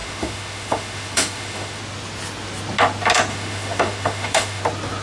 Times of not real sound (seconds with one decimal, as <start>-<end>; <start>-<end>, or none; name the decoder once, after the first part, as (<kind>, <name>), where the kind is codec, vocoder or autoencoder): 0.0-1.8 (autoencoder, DAC-VAE); 3.3-4.6